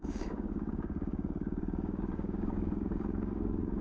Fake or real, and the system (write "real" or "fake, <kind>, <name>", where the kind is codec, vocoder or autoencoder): fake, codec, DAC